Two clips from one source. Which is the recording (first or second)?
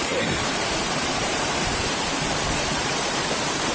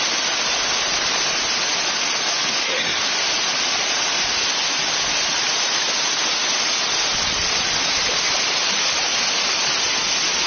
second